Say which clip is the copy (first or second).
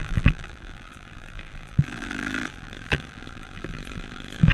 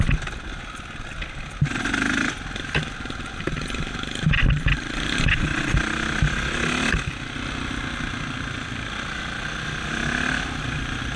first